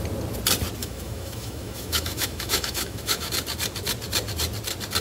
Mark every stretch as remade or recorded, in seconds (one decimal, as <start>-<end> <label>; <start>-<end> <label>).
0.0-0.8 recorded; 0.8-3.3 remade; 3.3-5.0 recorded